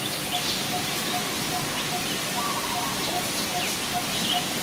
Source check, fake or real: real